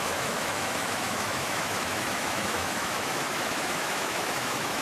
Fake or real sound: fake